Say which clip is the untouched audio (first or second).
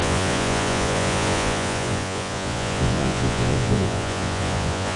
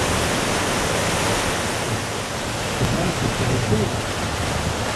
second